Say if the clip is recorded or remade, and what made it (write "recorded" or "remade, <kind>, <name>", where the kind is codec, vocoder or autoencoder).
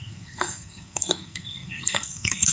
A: remade, codec, SNAC